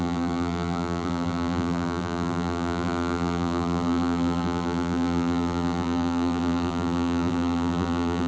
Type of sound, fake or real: fake